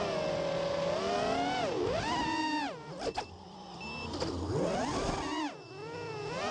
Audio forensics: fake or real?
real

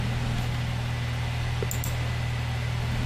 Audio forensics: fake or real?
real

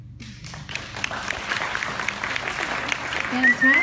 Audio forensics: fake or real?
real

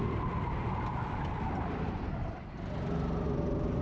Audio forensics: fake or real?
real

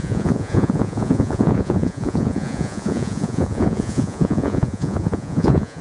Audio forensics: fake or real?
fake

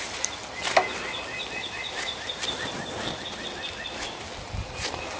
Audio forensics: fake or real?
real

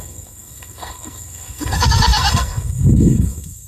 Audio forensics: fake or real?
fake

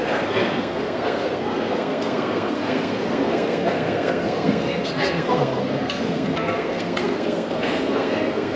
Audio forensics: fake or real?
fake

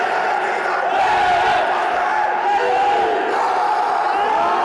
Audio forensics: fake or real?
real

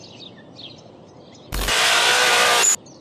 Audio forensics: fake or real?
real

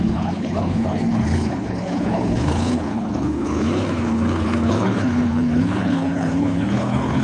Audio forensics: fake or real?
fake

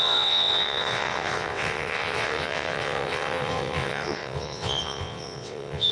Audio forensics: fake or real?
fake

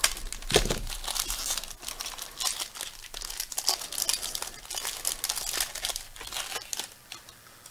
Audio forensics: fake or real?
real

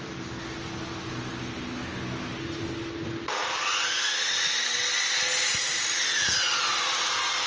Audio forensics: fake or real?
real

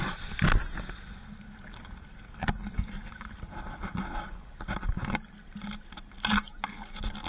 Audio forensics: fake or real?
real